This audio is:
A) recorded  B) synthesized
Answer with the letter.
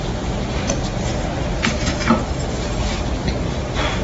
A